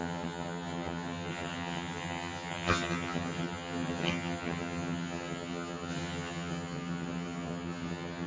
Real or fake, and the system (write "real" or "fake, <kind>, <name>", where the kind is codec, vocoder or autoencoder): fake, vocoder, HiFi-GAN